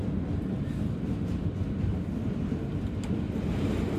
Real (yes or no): yes